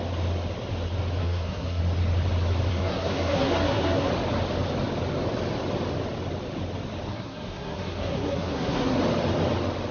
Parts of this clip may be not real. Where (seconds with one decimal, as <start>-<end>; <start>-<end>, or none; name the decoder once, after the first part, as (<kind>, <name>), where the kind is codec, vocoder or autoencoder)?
1.2-1.8 (codec, SNAC); 2.7-4.1; 7.1-9.0